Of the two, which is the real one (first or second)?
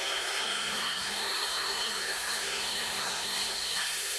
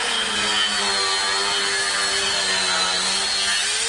second